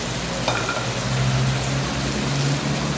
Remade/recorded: recorded